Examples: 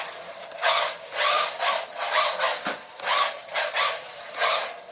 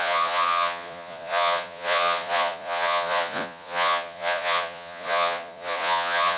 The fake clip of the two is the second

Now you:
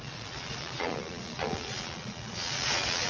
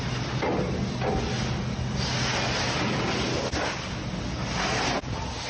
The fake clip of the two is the first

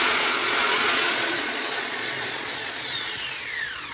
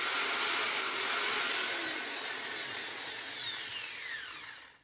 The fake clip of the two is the first